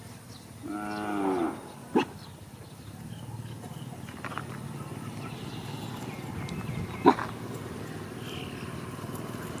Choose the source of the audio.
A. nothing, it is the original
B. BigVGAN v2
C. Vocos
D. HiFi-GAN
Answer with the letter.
A